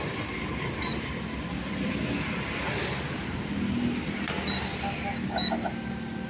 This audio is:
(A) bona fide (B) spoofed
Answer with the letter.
B